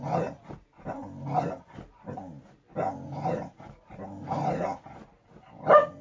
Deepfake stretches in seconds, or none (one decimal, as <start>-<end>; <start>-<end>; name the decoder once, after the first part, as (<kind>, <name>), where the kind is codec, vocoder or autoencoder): none